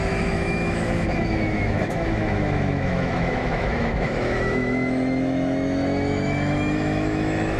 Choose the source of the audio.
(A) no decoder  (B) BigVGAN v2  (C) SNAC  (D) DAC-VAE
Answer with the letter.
D